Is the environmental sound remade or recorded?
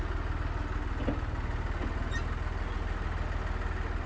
recorded